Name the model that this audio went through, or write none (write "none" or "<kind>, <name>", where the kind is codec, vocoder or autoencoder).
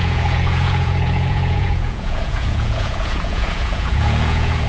vocoder, Vocos